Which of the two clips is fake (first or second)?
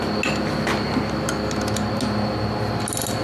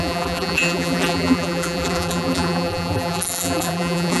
second